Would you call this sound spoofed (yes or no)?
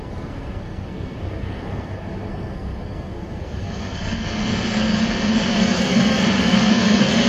yes